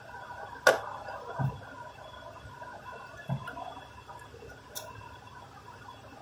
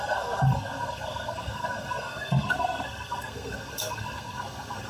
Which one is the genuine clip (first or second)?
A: first